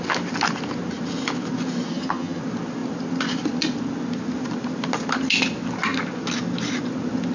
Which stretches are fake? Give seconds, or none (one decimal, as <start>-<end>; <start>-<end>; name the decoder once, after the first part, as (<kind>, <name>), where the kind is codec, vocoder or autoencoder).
1.9-2.4 (vocoder, HiFi-GAN)

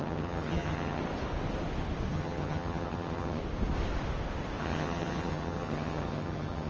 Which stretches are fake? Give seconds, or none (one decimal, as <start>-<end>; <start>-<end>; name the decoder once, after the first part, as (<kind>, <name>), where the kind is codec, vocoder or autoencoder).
0.0-1.0 (vocoder, HiFi-GAN); 2.1-3.4; 4.6-6.7